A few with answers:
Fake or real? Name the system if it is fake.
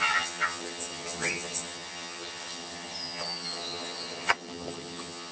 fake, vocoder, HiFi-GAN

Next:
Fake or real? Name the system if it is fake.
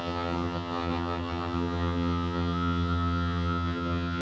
fake, vocoder, HiFi-GAN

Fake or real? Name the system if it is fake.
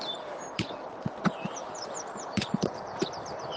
real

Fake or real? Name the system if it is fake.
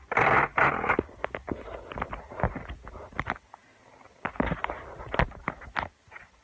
real